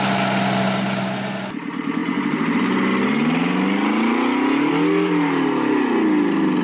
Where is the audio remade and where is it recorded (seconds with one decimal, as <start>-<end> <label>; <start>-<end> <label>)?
0.0-6.6 recorded